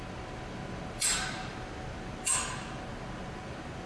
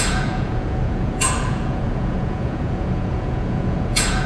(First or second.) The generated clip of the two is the second